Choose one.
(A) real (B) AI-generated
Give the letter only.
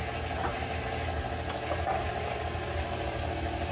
A